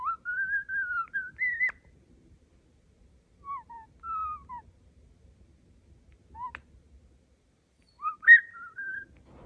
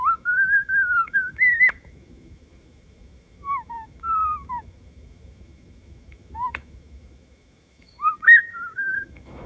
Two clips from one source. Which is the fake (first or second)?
second